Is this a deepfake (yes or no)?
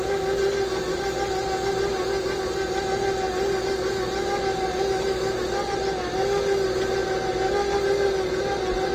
no